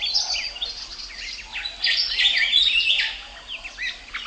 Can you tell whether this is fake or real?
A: real